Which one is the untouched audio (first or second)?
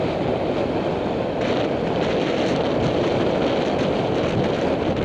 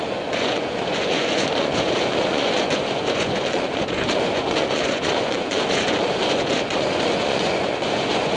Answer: first